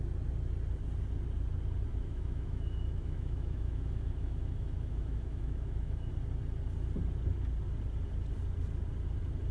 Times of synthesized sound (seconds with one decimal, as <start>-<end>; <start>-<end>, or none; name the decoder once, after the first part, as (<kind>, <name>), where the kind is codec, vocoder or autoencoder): 1.9-6.1 (autoencoder, DAC-VAE)